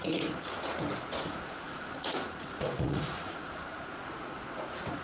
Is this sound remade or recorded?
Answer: remade